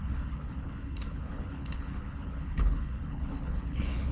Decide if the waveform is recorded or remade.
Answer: remade